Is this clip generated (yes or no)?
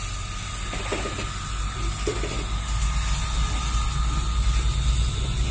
no